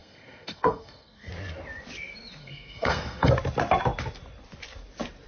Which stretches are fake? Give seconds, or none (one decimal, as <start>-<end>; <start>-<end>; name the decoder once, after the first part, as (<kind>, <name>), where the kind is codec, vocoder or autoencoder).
0.0-1.3 (codec, SNAC); 2.4-3.3